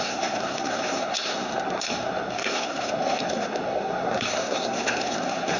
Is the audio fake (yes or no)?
yes